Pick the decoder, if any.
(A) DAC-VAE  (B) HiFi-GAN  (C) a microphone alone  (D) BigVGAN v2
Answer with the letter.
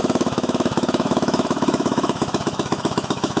A